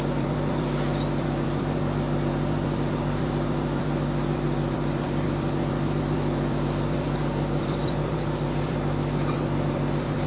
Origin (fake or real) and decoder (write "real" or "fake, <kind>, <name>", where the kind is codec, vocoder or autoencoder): fake, vocoder, BigVGAN v2